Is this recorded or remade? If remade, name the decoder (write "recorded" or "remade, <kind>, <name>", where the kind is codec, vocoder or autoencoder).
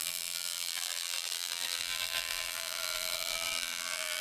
remade, vocoder, BigVGAN v2